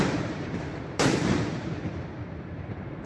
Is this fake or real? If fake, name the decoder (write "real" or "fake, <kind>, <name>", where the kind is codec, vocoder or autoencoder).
fake, vocoder, BigVGAN v2